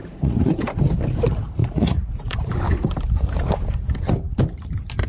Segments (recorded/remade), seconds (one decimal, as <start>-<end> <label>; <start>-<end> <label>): 0.0-0.8 remade; 0.8-1.6 recorded; 1.6-2.4 remade; 2.4-5.1 recorded